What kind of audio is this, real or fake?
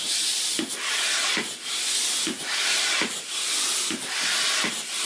real